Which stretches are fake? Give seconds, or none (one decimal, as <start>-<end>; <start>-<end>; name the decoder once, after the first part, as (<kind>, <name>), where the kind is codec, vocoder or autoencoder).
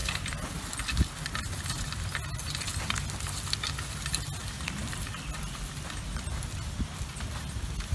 none